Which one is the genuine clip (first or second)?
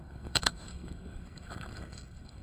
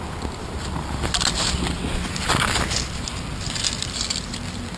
second